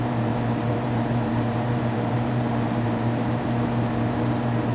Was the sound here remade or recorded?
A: remade